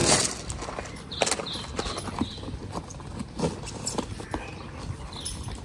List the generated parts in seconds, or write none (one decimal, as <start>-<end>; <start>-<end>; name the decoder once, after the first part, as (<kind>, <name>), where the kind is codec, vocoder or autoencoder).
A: none